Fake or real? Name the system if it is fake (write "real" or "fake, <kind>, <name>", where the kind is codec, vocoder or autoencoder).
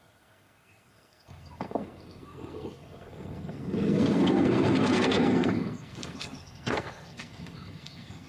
fake, codec, SNAC